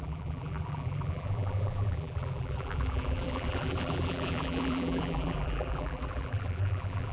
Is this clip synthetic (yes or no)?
yes